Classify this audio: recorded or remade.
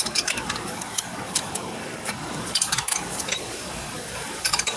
remade